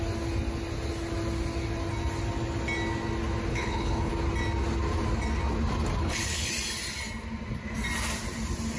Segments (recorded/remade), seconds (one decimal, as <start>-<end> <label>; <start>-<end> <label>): 0.0-3.5 recorded; 3.5-4.1 remade; 4.1-6.0 recorded; 6.0-6.5 remade; 6.5-8.8 recorded